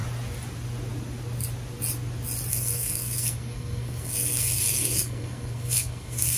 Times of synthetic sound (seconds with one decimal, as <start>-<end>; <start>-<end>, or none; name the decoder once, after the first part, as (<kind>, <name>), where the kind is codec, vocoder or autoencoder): 2.5-6.4 (codec, SNAC)